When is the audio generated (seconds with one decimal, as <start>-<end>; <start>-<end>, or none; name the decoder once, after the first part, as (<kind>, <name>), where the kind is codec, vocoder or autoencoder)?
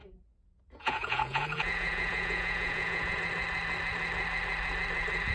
0.0-3.2 (vocoder, Vocos)